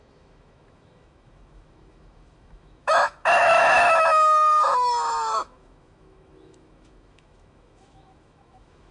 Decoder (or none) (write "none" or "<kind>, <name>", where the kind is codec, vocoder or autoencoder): autoencoder, DAC-VAE